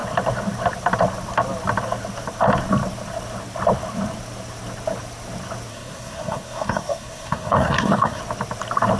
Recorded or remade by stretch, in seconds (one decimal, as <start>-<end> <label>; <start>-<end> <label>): 0.0-5.7 recorded; 5.7-8.2 remade; 8.2-9.0 recorded